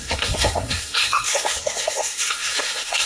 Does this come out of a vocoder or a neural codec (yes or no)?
yes